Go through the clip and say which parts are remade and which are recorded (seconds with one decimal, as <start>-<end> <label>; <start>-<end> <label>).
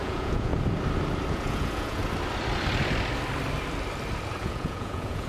0.0-0.5 remade; 0.5-1.3 recorded; 1.3-2.0 remade; 2.0-4.4 recorded; 4.4-5.3 remade